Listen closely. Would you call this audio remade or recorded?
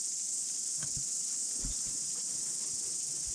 recorded